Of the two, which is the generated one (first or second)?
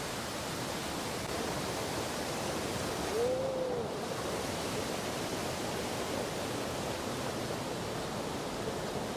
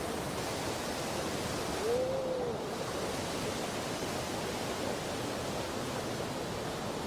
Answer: first